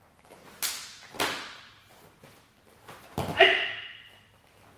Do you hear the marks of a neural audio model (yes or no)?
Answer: no